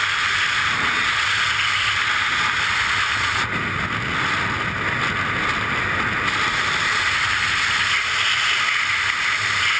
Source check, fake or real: real